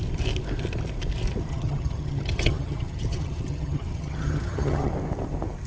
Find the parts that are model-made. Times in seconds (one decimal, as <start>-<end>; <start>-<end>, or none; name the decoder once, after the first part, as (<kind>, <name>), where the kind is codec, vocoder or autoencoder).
1.5-4.9 (vocoder, HiFi-GAN)